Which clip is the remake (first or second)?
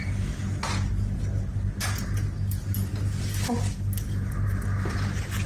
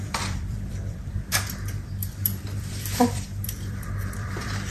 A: second